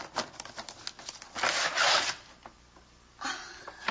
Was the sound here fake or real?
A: real